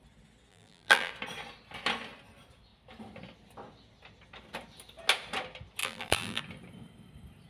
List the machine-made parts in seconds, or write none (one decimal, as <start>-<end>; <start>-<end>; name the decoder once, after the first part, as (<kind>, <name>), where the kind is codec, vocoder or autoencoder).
0.5-1.1 (vocoder, BigVGAN v2); 5.8-6.4